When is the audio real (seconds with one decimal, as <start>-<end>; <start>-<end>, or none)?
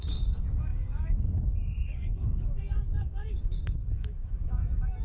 none